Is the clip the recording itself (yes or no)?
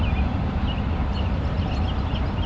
yes